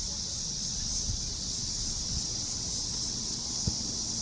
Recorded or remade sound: remade